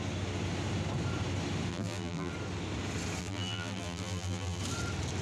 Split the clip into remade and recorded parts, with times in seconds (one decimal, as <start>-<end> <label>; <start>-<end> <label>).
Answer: 0.0-1.7 recorded; 1.7-2.3 remade; 2.3-3.2 recorded; 3.2-4.6 remade; 4.6-5.2 recorded